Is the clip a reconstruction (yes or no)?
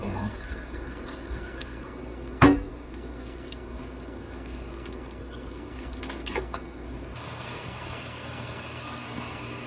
yes